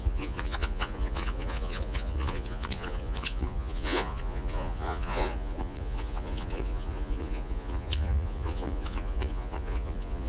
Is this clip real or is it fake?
fake